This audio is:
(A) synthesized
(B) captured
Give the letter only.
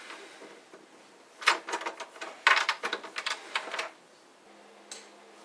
B